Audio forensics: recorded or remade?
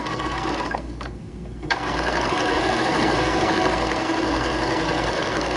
remade